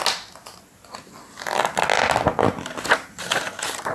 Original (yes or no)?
yes